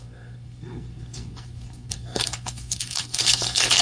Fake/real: fake